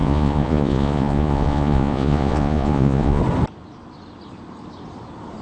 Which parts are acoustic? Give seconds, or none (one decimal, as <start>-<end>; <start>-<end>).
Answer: 3.2-5.4